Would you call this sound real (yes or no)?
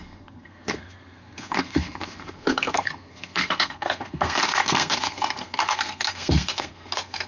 no